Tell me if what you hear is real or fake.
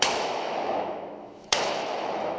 fake